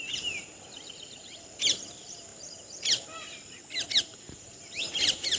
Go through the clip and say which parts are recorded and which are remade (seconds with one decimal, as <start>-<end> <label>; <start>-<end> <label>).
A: 0.0-2.3 remade; 2.3-4.0 recorded; 4.0-5.4 remade